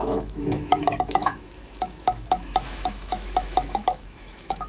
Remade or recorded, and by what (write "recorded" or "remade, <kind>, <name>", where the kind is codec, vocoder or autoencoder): remade, autoencoder, DAC-VAE